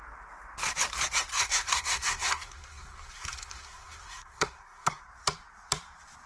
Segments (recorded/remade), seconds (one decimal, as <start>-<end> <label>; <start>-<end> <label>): 0.0-1.3 recorded; 1.3-5.0 remade; 5.0-6.3 recorded